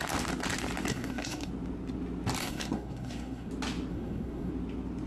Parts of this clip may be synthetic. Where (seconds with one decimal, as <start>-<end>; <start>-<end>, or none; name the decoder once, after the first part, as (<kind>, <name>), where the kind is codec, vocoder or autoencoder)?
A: 0.9-1.5 (codec, SNAC); 2.4-3.5; 3.9-4.5